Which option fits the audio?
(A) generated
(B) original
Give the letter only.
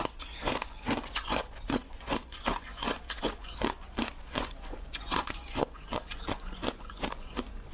A